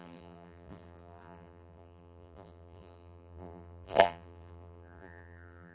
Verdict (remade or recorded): remade